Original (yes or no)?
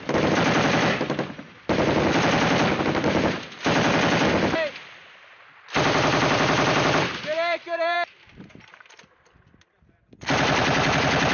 no